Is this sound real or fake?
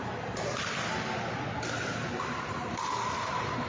real